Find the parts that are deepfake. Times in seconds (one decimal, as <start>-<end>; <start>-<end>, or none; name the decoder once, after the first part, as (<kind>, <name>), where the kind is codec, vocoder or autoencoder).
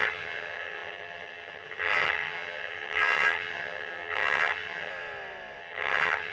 0.0-4.9 (vocoder, HiFi-GAN); 5.6-6.3